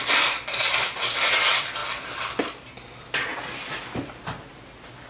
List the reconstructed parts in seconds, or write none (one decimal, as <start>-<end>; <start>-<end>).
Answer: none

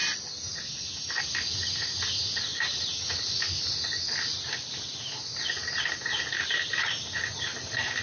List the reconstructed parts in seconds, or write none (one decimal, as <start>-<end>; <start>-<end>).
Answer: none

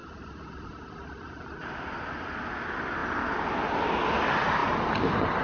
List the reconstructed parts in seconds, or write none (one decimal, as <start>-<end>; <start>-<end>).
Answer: none

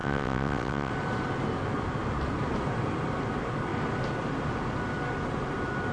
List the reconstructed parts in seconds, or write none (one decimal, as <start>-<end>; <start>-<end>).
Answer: 0.0-0.9